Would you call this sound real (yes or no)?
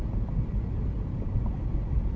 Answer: yes